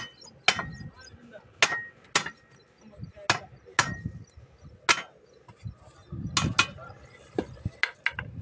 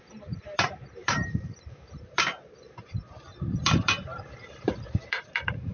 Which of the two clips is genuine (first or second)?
first